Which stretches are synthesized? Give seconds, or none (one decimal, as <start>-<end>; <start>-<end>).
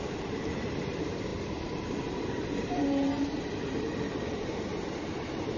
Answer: 0.0-4.7